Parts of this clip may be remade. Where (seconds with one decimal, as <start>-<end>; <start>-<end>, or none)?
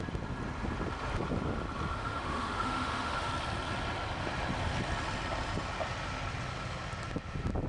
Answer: 2.0-3.3